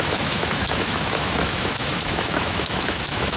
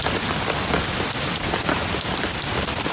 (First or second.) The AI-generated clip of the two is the first